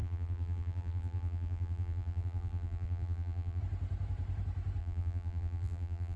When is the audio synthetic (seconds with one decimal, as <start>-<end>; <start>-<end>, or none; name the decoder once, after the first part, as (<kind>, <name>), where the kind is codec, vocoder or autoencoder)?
0.0-3.6 (vocoder, BigVGAN v2); 4.8-6.2